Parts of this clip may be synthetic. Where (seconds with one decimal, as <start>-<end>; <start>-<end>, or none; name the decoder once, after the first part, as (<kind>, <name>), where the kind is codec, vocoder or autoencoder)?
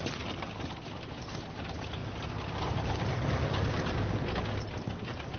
none